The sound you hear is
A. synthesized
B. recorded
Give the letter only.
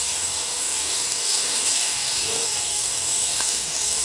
A